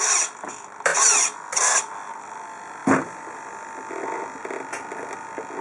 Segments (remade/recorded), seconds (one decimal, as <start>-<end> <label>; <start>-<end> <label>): 0.0-0.9 remade; 0.9-1.9 recorded; 1.9-4.4 remade; 4.4-5.6 recorded